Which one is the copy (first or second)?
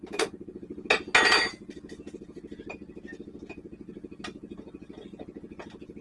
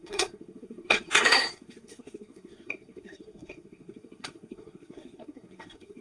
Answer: second